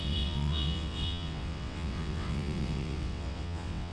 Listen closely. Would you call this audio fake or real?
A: fake